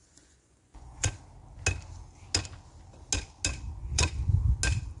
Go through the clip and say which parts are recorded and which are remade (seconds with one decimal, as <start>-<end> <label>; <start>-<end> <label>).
0.0-1.2 remade; 1.2-3.8 recorded; 3.8-4.4 remade; 4.4-5.0 recorded